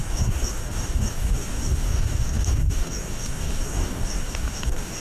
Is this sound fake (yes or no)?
yes